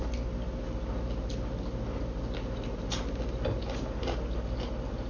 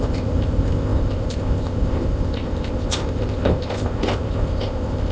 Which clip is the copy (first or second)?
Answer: second